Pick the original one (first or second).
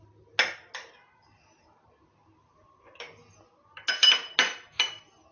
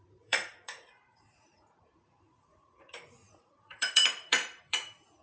first